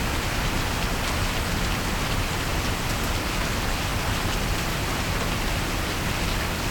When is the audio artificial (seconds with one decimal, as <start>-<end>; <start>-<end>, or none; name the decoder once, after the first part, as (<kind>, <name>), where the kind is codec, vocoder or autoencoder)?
none